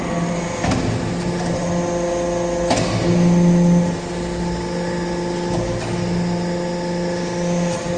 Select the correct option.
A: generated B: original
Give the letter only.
B